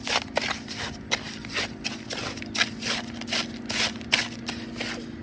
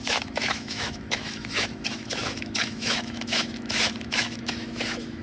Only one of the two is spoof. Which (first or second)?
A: second